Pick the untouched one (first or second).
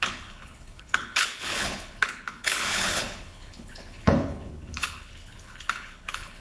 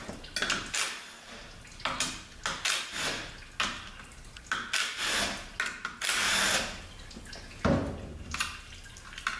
second